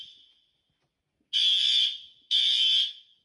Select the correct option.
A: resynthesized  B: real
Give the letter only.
B